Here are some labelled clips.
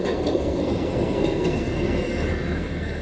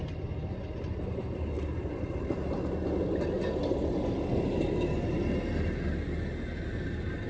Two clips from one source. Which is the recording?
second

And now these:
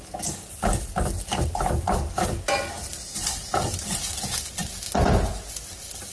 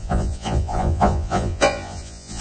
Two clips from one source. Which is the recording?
first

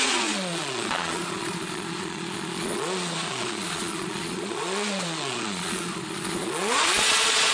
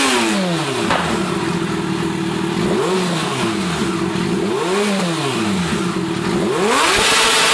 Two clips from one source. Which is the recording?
second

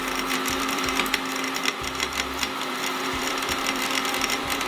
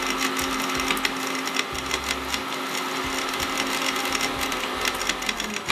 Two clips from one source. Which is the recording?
second